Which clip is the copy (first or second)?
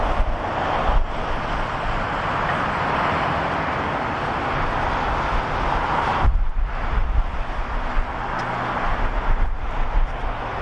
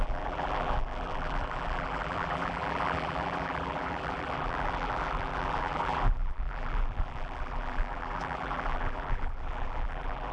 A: second